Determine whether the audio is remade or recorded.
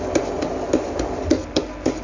recorded